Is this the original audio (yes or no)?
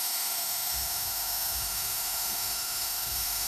no